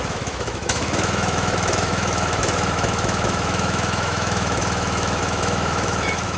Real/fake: fake